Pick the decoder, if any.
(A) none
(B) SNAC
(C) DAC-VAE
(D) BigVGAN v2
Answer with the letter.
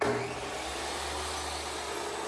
A